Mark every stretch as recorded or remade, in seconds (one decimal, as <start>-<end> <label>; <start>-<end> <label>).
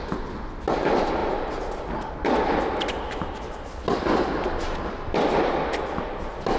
0.0-6.6 recorded